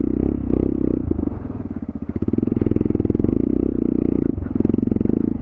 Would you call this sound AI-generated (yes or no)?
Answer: no